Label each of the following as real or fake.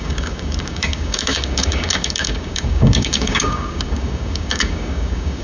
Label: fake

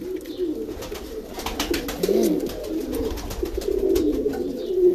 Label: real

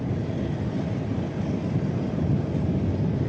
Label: real